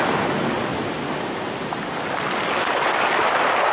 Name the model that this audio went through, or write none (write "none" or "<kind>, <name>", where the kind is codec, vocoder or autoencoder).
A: none